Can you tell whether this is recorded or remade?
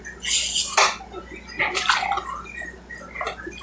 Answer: recorded